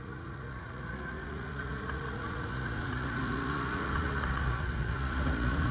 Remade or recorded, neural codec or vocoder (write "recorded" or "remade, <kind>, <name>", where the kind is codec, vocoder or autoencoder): remade, vocoder, Vocos